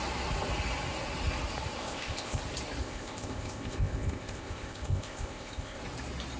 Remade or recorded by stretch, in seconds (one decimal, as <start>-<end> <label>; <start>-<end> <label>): 0.0-1.8 recorded; 1.8-2.4 remade; 2.4-2.8 recorded; 2.8-5.8 remade; 5.8-6.4 recorded